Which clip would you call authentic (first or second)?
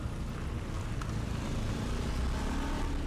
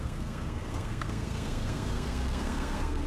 first